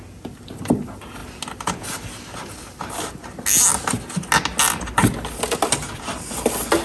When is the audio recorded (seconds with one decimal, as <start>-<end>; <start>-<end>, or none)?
0.0-6.8